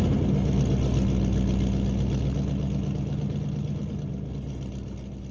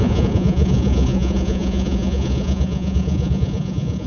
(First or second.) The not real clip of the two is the second